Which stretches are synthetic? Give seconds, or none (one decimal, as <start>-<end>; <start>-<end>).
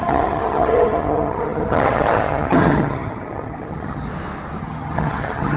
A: 0.0-4.1; 4.6-5.6